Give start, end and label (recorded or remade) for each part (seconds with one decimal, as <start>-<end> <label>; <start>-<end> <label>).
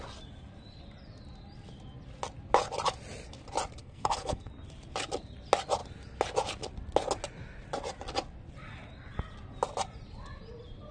0.0-3.8 recorded; 3.8-4.5 remade; 4.5-10.9 recorded